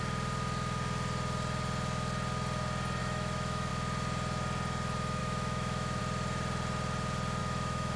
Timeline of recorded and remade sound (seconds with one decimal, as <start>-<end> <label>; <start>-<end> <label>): 0.0-3.0 recorded; 3.0-3.7 remade; 3.7-5.2 recorded; 5.2-6.0 remade; 6.0-7.4 recorded; 7.4-8.0 remade